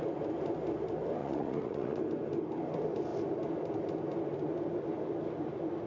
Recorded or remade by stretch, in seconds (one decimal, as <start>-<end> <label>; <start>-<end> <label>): 0.0-1.2 recorded; 1.2-2.0 remade; 2.0-5.9 recorded